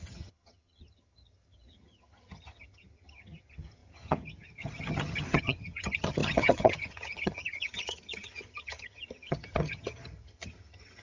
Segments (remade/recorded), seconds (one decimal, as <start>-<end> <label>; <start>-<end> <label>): 0.0-11.0 remade